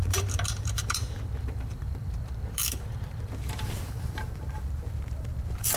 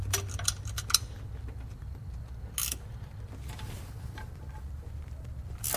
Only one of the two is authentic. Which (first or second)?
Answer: second